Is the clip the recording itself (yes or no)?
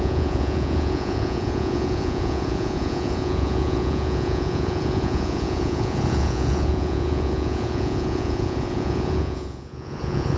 no